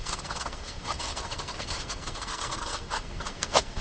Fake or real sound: fake